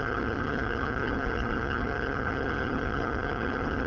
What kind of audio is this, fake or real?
fake